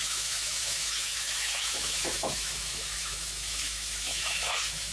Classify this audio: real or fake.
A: fake